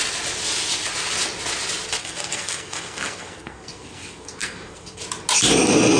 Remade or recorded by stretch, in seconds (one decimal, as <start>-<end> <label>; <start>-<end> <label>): 0.0-2.0 recorded; 2.0-5.0 remade; 5.0-6.0 recorded